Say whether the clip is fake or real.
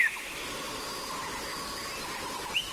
real